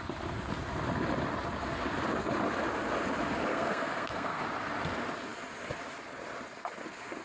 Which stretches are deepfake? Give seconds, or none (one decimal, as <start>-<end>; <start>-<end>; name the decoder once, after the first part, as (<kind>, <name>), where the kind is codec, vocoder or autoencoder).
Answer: 3.5-4.4 (codec, SNAC)